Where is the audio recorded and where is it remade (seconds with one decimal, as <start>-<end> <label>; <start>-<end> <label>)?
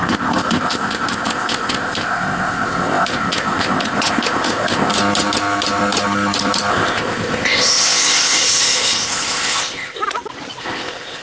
0.0-4.9 remade; 4.9-6.7 recorded; 6.7-10.0 remade; 10.0-10.6 recorded; 10.6-11.2 remade